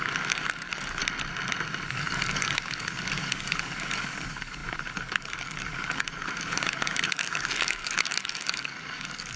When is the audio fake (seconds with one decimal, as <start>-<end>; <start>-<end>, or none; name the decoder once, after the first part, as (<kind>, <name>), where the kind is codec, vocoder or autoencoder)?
0.0-1.0 (codec, DAC); 1.9-9.4